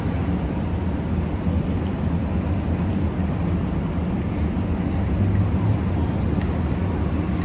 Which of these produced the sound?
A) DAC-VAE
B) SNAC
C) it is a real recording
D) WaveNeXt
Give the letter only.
C